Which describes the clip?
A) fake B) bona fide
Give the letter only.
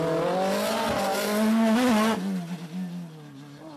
B